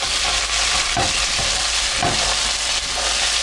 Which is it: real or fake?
real